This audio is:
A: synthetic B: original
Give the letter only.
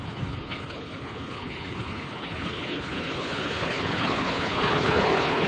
A